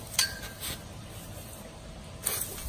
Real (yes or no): yes